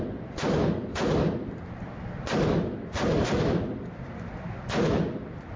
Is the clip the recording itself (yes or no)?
yes